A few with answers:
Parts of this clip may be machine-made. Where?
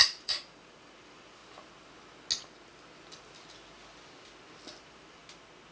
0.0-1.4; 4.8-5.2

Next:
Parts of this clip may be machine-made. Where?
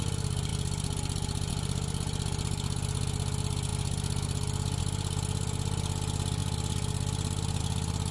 none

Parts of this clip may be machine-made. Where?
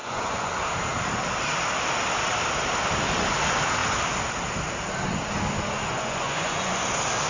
0.0-0.5; 5.9-6.8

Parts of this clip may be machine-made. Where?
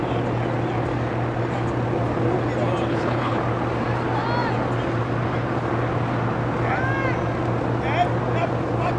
2.9-3.4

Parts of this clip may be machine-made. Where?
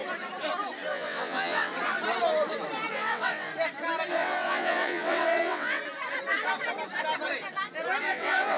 0.9-1.7; 2.9-3.5; 4.1-5.8; 8.0-8.6